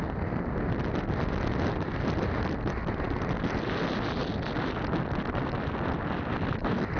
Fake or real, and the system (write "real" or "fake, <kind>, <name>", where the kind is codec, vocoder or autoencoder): real